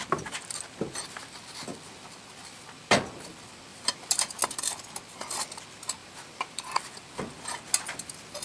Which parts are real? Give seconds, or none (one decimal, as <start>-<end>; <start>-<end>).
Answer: 0.0-3.7; 4.4-6.0; 6.9-8.4